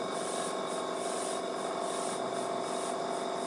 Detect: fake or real real